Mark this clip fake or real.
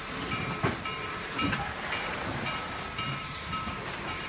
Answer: fake